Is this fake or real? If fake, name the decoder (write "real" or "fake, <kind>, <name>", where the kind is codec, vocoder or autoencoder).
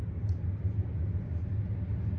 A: real